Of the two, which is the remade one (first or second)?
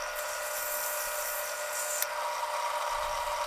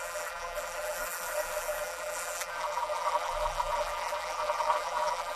second